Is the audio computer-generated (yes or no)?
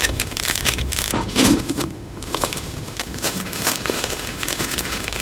yes